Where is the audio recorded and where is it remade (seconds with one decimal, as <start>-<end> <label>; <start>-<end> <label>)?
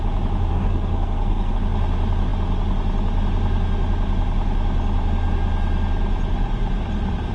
0.0-0.5 recorded; 0.5-1.5 remade; 1.5-7.3 recorded